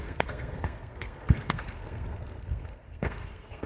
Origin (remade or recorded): remade